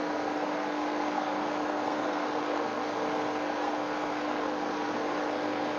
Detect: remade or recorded remade